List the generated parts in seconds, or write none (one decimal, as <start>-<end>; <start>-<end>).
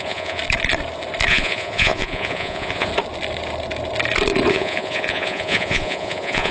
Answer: 0.0-0.4; 1.3-2.9; 4.5-6.5